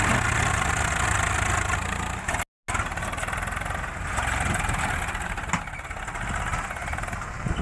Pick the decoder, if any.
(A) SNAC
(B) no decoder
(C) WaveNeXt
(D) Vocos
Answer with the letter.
B